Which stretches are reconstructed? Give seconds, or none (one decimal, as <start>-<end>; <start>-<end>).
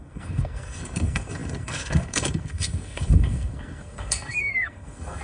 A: 0.0-5.2